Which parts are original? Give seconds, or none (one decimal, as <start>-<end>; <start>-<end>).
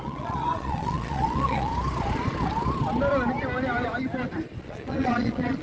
1.7-4.6